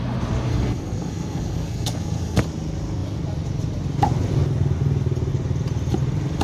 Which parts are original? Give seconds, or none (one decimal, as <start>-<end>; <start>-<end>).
0.0-0.5; 2.4-6.4